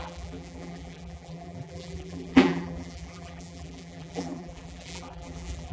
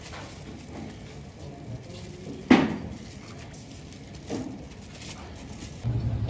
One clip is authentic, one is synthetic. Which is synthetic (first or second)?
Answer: first